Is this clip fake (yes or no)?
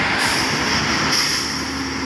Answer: no